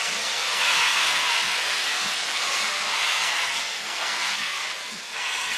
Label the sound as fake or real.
fake